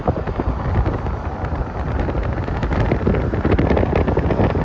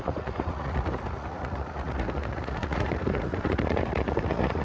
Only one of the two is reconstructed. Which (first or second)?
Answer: second